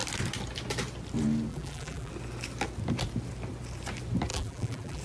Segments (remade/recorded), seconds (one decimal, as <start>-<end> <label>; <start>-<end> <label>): 0.0-1.5 recorded; 1.5-2.1 remade; 2.1-4.3 recorded; 4.3-5.0 remade